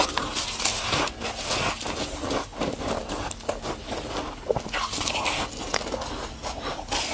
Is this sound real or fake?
real